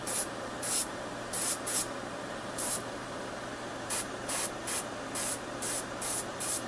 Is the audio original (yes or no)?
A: no